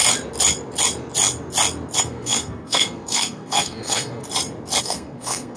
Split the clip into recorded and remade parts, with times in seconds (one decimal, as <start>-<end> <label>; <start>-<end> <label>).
0.0-2.0 recorded; 2.0-4.2 remade; 4.2-4.8 recorded; 4.8-5.6 remade